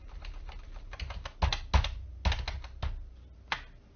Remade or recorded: recorded